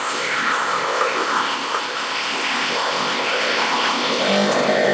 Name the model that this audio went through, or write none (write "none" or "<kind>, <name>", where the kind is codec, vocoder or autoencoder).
codec, ZipCodec